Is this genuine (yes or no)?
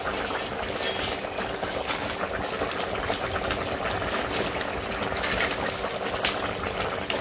yes